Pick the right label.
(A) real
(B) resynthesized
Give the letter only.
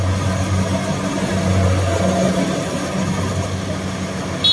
A